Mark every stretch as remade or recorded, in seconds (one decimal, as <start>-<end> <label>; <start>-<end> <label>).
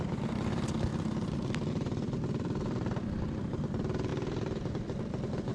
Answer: 0.0-0.9 remade; 0.9-1.7 recorded; 1.7-5.5 remade